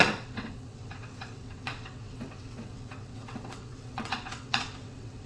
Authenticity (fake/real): fake